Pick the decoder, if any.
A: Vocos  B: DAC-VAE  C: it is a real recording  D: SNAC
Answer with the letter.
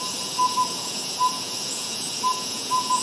A